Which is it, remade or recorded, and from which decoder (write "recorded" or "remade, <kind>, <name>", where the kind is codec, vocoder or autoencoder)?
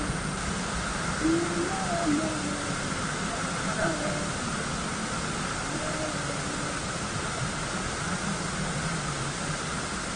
recorded